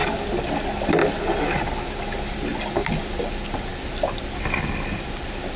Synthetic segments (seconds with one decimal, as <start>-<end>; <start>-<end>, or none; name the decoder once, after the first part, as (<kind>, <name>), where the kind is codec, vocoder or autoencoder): none

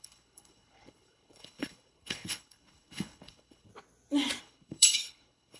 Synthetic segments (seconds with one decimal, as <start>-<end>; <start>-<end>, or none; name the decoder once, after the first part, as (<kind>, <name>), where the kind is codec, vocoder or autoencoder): 0.0-3.7 (codec, HILCodec); 4.4-5.6

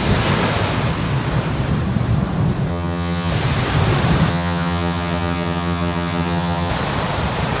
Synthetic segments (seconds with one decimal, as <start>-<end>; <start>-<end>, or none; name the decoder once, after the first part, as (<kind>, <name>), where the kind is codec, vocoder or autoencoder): 2.7-3.3 (vocoder, HiFi-GAN); 4.3-6.7

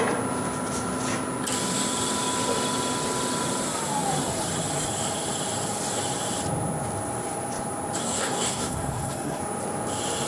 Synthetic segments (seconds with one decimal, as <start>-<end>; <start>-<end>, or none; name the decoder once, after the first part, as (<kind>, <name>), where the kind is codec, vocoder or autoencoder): 8.0-9.4 (codec, SNAC)

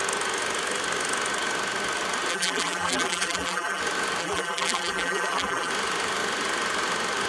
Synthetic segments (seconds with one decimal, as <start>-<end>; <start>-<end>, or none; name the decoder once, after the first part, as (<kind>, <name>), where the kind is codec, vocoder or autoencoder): 2.3-3.8 (vocoder, BigVGAN v2); 4.2-5.7

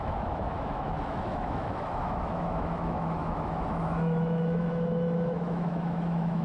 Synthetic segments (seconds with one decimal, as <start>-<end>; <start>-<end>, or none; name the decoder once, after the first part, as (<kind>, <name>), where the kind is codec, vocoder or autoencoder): 0.0-6.4 (autoencoder, DAC-VAE)

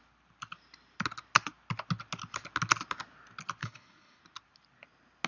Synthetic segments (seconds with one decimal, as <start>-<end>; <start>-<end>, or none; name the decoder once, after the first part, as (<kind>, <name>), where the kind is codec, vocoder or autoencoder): 3.6-4.2 (codec, HILCodec)